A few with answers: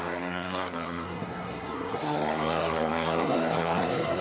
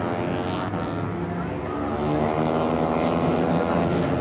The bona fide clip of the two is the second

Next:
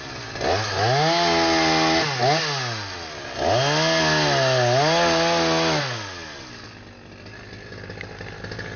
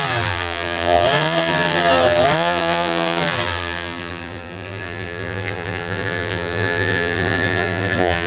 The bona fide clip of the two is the first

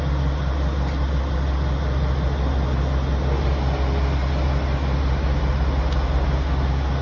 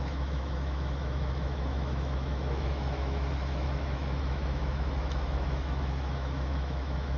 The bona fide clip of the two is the first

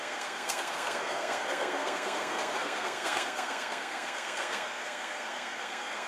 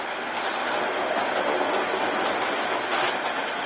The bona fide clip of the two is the second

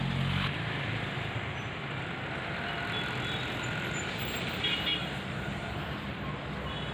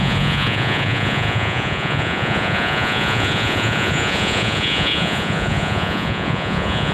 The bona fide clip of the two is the first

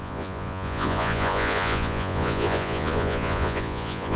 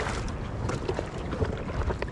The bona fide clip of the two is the second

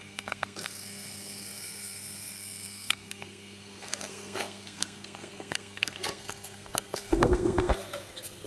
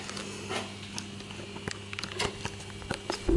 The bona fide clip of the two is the second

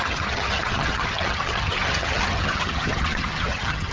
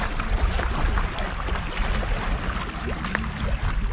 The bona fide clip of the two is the second